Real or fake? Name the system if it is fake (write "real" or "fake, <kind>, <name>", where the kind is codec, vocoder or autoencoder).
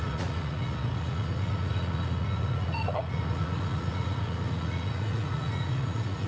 fake, vocoder, Vocos